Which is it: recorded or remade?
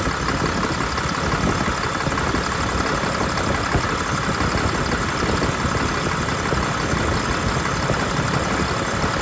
recorded